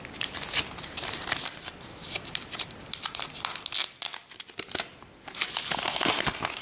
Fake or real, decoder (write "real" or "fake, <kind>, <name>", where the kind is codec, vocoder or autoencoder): real